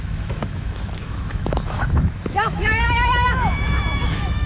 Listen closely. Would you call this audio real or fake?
fake